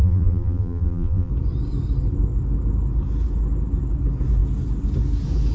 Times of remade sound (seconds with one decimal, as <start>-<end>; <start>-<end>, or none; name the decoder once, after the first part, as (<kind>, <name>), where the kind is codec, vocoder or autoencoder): 0.0-1.3 (vocoder, BigVGAN v2)